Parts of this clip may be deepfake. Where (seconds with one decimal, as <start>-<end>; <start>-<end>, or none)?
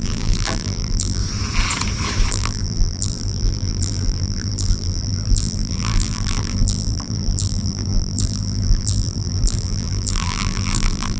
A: 0.0-1.2; 2.3-11.2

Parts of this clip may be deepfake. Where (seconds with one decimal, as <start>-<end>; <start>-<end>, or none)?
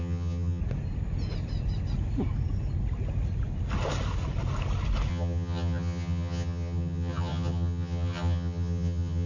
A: 0.0-0.6; 5.1-9.3